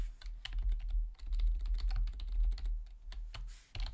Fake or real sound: real